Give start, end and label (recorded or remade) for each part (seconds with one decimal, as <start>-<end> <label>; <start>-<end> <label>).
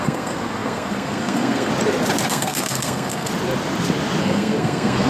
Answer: 0.0-1.7 remade; 1.7-2.3 recorded; 2.3-3.3 remade; 3.3-4.2 recorded; 4.2-5.1 remade